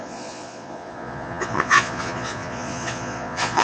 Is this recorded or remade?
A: remade